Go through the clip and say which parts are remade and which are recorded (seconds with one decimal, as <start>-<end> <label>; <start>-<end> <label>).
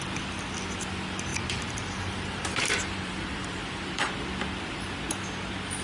0.0-1.3 recorded; 1.3-4.1 remade; 4.1-5.8 recorded